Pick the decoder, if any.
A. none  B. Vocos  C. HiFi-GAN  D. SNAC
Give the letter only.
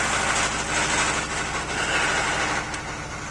A